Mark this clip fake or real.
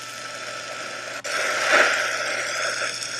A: real